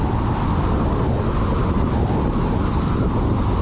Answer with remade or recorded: recorded